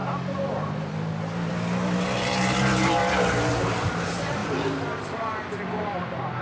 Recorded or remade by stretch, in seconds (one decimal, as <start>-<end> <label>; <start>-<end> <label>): 0.0-6.4 recorded